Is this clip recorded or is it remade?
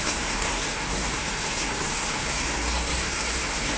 remade